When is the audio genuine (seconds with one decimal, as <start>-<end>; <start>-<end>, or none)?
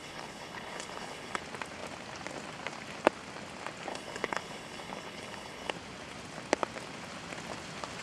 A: 1.4-3.9; 5.7-8.0